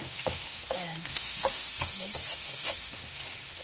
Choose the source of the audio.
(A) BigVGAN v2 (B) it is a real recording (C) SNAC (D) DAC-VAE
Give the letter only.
D